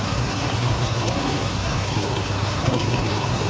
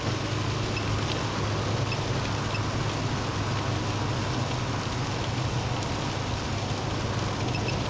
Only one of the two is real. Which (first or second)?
second